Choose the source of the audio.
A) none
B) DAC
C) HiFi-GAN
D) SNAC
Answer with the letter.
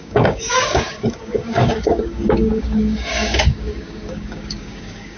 B